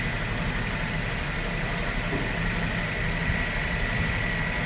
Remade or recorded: recorded